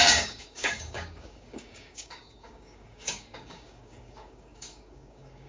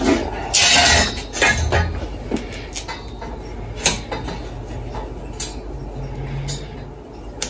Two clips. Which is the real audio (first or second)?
second